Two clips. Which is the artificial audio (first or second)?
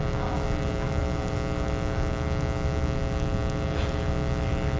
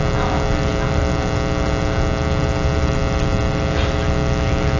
first